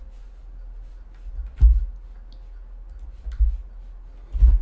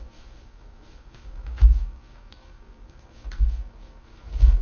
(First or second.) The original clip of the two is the first